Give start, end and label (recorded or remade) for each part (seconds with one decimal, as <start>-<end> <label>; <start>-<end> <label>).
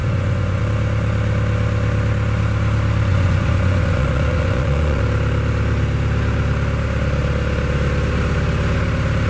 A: 0.0-0.6 remade; 0.6-3.1 recorded; 3.1-5.0 remade; 5.0-9.3 recorded